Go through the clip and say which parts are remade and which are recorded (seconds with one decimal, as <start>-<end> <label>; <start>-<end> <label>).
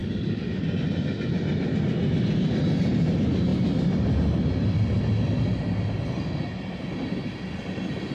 0.0-0.6 remade; 0.6-8.1 recorded